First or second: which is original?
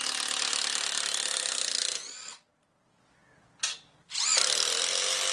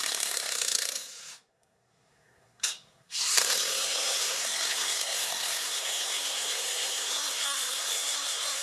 first